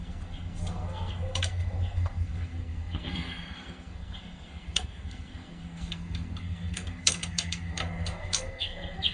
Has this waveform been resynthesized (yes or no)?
yes